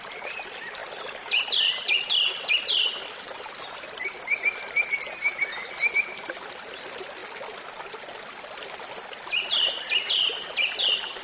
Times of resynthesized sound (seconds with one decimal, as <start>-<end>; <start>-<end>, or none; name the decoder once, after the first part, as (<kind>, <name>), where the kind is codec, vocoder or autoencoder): 0.8-3.6 (vocoder, BigVGAN v2)